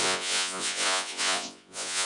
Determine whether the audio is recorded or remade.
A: remade